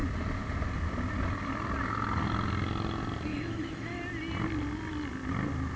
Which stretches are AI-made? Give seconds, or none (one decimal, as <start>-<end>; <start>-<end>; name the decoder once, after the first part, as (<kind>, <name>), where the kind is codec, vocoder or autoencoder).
3.3-4.0 (autoencoder, DAC-VAE)